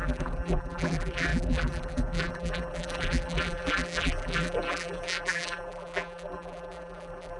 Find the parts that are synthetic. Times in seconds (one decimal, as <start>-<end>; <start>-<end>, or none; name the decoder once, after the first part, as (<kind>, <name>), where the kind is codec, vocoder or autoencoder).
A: 0.0-7.4 (vocoder, BigVGAN v2)